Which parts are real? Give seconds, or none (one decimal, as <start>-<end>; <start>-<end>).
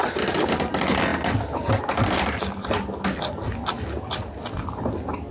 0.0-5.3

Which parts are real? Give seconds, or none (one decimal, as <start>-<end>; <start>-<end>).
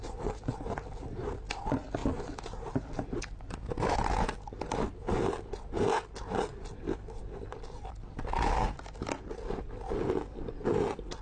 0.0-11.2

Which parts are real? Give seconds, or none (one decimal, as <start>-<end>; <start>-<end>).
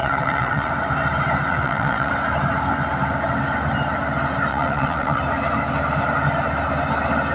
0.7-1.5; 2.1-4.5; 5.2-7.3